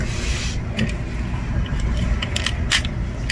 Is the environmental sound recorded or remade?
recorded